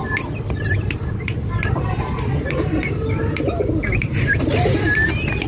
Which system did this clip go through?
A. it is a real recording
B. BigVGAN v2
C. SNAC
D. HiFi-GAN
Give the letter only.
B